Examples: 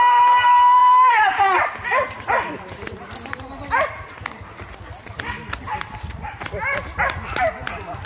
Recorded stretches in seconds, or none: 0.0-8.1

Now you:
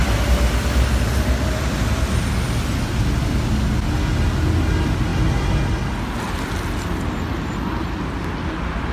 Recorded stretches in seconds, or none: 0.0-8.9